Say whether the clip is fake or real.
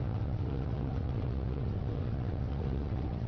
fake